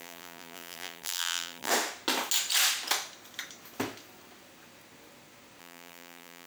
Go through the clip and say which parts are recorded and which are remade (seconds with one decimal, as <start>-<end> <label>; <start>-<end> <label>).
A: 0.0-1.7 remade; 1.7-5.6 recorded; 5.6-6.5 remade